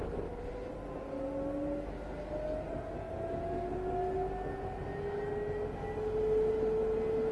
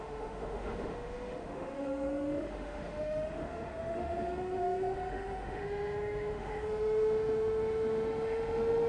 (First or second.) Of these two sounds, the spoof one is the second